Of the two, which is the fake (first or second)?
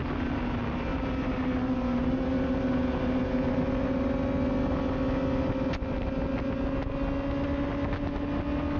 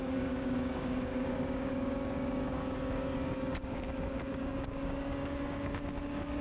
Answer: second